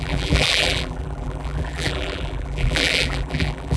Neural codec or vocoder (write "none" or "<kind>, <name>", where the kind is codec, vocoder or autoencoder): vocoder, BigVGAN v2